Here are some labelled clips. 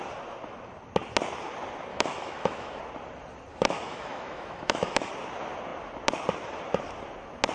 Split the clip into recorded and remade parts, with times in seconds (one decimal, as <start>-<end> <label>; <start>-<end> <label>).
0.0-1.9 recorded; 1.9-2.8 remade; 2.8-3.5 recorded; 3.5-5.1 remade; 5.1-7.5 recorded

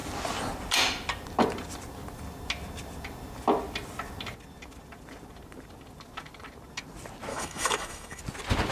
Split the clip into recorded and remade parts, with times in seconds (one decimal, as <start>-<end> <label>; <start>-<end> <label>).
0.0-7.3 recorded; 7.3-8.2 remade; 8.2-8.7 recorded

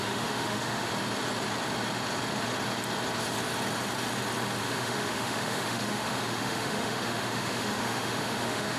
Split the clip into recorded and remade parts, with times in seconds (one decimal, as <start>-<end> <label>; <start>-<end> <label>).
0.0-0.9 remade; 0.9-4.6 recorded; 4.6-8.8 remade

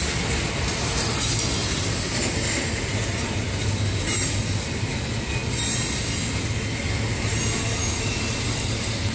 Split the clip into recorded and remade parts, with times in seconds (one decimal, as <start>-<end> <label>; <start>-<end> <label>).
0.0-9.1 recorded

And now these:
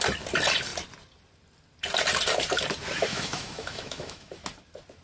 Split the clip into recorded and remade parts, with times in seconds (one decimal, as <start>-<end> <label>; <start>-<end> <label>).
0.0-3.1 recorded; 3.1-4.3 remade; 4.3-5.0 recorded

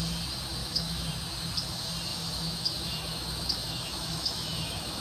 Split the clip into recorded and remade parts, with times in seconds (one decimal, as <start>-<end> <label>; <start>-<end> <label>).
0.0-0.6 recorded; 0.6-1.1 remade; 1.1-2.1 recorded; 2.1-5.0 remade

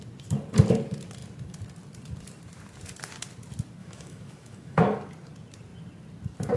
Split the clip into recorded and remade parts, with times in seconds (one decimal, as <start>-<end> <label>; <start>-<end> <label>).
0.0-3.8 recorded; 3.8-4.8 remade; 4.8-6.6 recorded